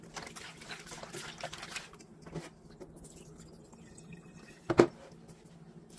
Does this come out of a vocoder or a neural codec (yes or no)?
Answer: no